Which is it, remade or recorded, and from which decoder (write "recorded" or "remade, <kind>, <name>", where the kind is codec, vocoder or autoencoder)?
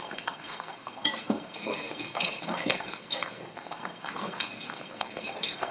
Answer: remade, codec, SNAC